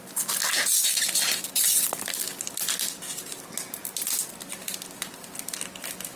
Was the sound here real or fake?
real